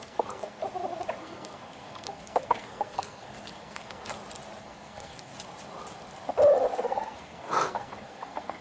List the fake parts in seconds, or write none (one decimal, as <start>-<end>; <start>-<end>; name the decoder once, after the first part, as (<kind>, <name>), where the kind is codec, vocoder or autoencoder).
0.0-0.6 (codec, SNAC); 1.2-4.1; 4.6-5.3; 6.7-8.6